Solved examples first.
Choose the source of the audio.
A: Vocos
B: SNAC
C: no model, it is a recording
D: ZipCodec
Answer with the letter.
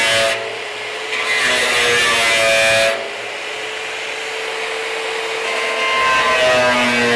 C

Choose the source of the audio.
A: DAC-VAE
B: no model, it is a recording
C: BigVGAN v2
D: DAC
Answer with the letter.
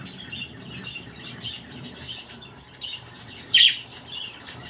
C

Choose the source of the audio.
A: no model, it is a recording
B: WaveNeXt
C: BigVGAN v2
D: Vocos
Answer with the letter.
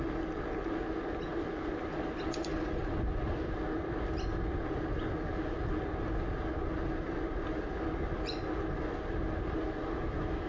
A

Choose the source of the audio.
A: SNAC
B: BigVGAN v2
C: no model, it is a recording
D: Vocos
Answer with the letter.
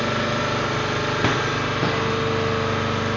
C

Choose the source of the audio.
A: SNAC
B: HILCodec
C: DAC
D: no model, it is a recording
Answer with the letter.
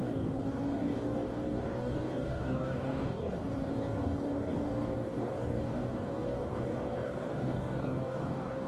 C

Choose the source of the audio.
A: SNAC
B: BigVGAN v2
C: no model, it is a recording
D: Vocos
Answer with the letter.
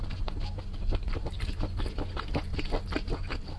C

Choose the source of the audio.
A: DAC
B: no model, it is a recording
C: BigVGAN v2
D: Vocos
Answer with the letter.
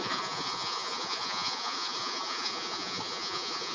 D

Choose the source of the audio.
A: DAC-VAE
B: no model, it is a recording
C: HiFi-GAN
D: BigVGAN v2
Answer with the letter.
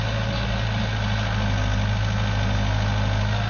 B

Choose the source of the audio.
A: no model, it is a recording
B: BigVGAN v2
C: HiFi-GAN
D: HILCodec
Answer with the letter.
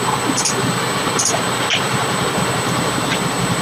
B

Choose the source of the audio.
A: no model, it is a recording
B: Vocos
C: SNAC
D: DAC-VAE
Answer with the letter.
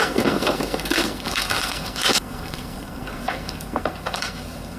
C